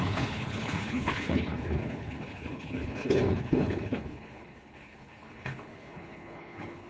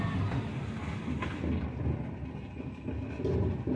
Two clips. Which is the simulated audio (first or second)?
first